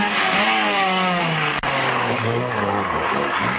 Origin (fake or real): fake